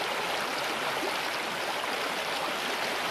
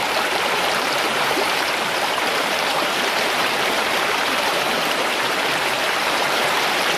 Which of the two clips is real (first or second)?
first